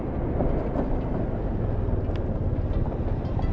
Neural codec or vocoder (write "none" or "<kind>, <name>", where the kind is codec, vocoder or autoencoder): none